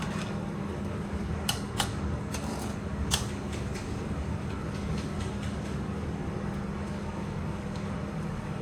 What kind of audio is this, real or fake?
fake